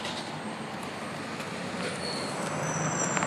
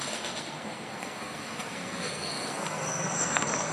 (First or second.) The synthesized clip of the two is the second